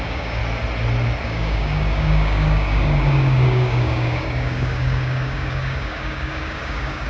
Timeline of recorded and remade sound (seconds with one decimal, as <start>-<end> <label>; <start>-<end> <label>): 0.0-0.4 remade; 0.4-1.2 recorded; 1.2-7.1 remade